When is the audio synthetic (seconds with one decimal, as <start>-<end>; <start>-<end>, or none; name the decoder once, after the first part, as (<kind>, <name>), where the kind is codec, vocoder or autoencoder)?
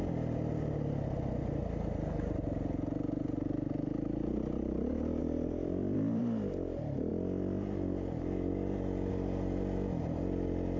5.2-6.2 (vocoder, BigVGAN v2)